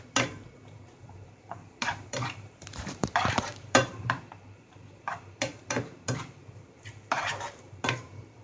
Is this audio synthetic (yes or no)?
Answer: yes